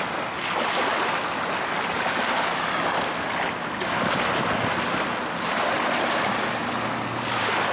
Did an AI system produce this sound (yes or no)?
no